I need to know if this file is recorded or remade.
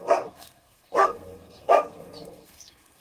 remade